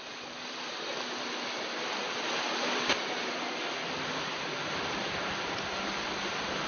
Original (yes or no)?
yes